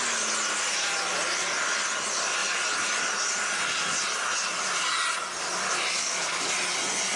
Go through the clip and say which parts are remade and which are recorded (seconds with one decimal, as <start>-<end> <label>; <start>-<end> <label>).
0.0-6.0 recorded; 6.0-6.5 remade; 6.5-7.2 recorded